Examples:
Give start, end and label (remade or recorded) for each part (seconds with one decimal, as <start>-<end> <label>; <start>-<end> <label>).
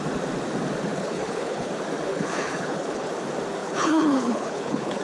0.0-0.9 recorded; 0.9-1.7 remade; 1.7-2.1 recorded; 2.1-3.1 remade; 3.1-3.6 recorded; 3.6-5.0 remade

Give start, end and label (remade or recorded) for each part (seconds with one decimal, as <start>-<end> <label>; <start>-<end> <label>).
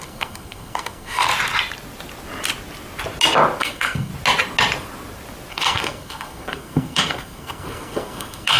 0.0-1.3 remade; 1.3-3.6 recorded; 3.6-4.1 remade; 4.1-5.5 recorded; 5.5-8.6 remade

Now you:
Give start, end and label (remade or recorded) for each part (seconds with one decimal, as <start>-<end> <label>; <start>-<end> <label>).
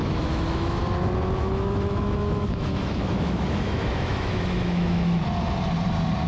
0.0-0.8 remade; 0.8-1.4 recorded; 1.4-5.2 remade; 5.2-6.3 recorded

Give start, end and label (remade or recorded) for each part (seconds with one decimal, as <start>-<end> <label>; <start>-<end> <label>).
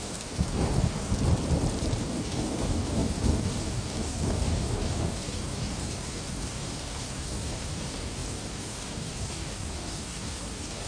0.0-1.1 remade; 1.1-2.0 recorded; 2.0-10.9 remade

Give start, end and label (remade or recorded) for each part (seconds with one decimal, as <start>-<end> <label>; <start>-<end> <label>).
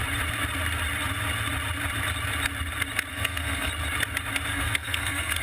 0.0-3.1 recorded; 3.1-3.7 remade; 3.7-4.5 recorded; 4.5-5.4 remade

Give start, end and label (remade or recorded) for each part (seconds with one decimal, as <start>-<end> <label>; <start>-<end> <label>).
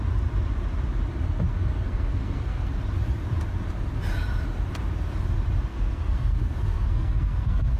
0.0-1.5 recorded; 1.5-2.7 remade; 2.7-5.7 recorded; 5.7-7.8 remade